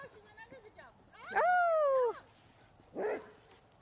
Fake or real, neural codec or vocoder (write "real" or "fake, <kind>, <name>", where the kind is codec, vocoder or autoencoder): real